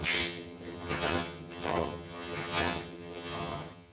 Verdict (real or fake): fake